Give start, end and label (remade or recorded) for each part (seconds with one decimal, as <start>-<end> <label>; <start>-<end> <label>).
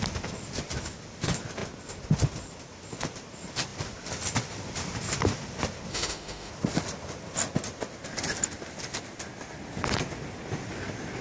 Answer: 0.0-5.9 recorded; 5.9-6.5 remade; 6.5-11.2 recorded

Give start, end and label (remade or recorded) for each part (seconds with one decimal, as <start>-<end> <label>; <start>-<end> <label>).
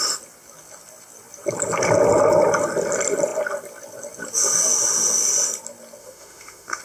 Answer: 0.0-6.0 recorded; 6.0-6.8 remade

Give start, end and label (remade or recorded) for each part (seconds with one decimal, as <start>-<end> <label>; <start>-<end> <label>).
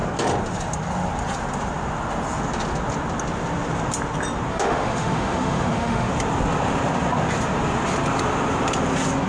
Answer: 0.0-4.5 recorded; 4.5-6.1 remade; 6.1-9.3 recorded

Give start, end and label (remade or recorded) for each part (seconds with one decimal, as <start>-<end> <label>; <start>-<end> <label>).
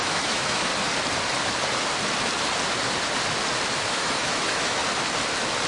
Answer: 0.0-0.7 remade; 0.7-3.7 recorded; 3.7-4.8 remade; 4.8-5.7 recorded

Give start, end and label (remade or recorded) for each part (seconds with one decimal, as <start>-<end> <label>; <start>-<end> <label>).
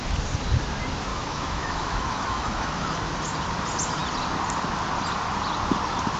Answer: 0.0-1.1 recorded; 1.1-3.0 remade; 3.0-6.2 recorded